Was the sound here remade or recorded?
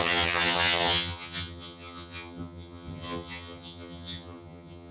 remade